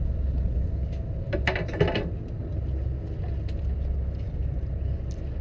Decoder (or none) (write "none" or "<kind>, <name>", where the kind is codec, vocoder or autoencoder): none